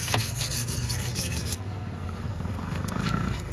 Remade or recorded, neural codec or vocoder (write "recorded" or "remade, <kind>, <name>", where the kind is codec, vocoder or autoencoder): remade, codec, SNAC